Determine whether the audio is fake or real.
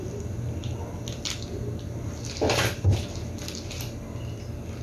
real